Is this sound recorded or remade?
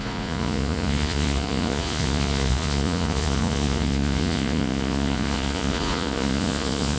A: remade